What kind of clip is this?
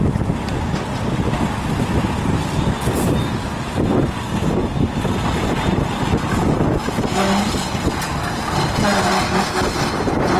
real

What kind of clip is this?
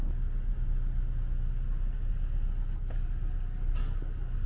real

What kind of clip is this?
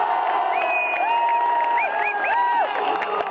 real